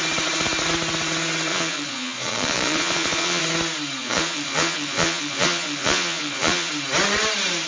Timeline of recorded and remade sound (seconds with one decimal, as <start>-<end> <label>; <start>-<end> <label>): 0.0-1.5 recorded; 1.5-3.4 remade; 3.4-4.0 recorded; 4.0-6.7 remade; 6.7-7.7 recorded